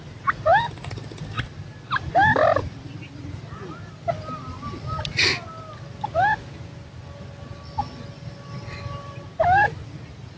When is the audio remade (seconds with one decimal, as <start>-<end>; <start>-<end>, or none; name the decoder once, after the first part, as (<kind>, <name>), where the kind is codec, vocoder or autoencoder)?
0.5-1.6 (vocoder, BigVGAN v2); 2.4-3.0